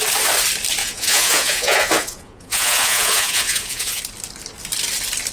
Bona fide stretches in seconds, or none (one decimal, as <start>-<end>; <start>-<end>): 0.0-0.8; 4.0-5.3